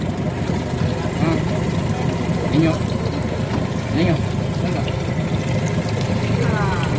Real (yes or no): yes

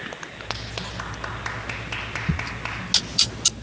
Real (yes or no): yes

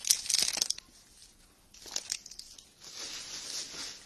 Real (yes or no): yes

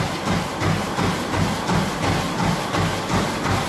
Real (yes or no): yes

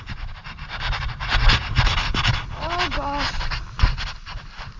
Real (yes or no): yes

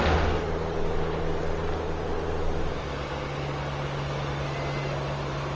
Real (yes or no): yes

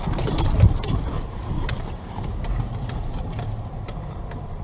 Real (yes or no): no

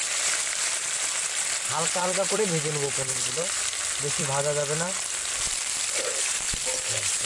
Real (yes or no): no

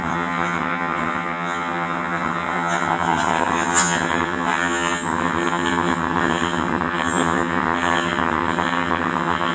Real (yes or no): no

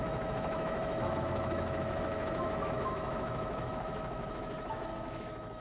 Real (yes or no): no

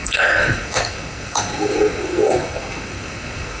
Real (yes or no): no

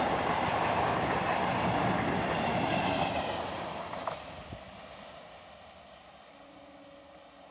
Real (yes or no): yes